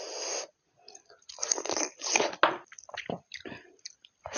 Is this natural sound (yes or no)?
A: yes